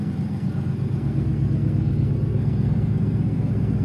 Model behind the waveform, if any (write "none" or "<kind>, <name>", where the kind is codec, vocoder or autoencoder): codec, SNAC